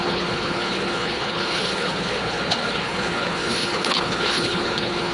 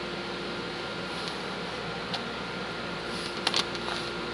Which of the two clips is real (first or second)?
second